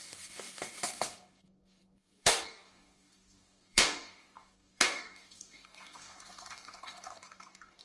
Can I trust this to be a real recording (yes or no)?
no